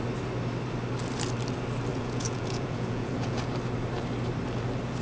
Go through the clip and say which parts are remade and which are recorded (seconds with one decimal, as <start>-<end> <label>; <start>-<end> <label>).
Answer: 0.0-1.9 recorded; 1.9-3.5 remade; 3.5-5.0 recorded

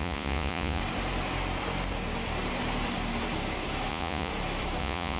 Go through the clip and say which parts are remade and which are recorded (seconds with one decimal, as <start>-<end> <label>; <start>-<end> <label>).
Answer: 0.0-0.8 remade; 0.8-3.9 recorded; 3.9-4.3 remade; 4.3-4.8 recorded; 4.8-5.2 remade

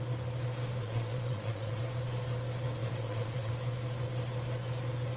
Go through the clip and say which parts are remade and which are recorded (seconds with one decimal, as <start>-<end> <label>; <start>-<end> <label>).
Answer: 0.0-0.8 recorded; 0.8-1.8 remade; 1.8-2.8 recorded; 2.8-3.5 remade; 3.5-5.2 recorded